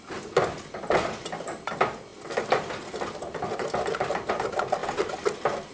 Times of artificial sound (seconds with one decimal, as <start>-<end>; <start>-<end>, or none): none